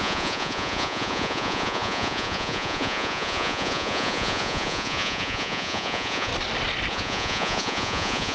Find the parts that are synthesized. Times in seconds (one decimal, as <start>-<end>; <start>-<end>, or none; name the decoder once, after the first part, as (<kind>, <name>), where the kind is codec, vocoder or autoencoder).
0.0-6.3 (vocoder, Vocos); 6.9-8.3